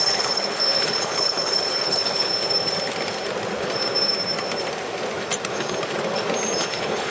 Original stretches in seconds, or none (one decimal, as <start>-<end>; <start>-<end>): 2.3-6.6